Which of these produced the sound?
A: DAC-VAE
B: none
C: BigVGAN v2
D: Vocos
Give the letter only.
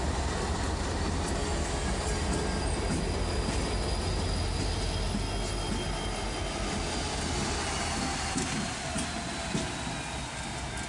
B